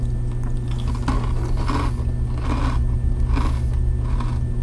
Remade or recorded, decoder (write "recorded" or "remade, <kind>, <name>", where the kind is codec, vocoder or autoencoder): recorded